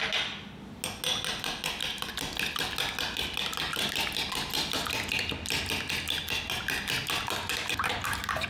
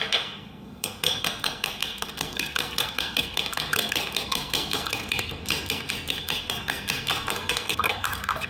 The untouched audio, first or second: first